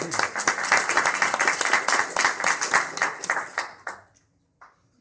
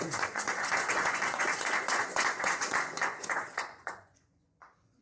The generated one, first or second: second